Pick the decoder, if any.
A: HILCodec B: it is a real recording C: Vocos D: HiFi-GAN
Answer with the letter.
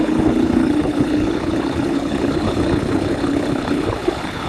A